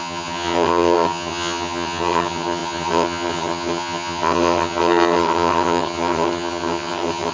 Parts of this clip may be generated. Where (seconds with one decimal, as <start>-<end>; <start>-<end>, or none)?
0.0-7.3